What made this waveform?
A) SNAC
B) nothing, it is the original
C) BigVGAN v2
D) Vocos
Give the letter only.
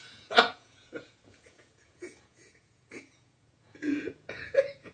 D